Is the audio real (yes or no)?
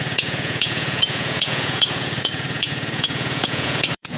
no